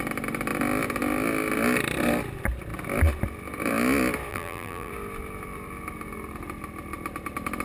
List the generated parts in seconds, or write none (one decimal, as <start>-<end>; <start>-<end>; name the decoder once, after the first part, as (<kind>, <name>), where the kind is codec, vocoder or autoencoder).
4.3-4.9 (vocoder, BigVGAN v2)